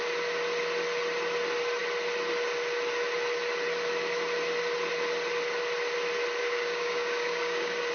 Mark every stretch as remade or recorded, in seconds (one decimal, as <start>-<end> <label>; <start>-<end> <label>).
0.0-6.4 recorded; 6.4-7.9 remade